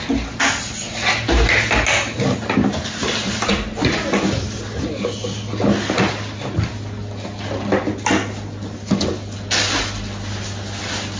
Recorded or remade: recorded